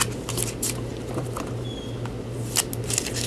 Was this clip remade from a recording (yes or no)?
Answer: no